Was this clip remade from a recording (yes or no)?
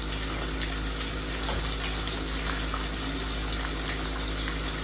no